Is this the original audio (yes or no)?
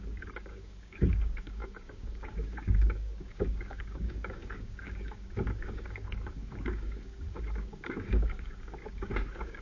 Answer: no